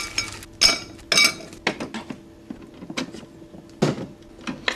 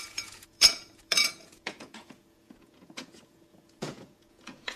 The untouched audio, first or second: first